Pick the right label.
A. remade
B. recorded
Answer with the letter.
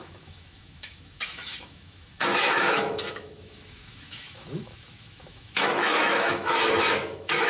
A